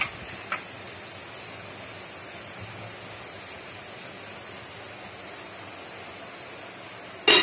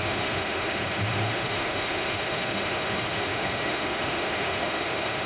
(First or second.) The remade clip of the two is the second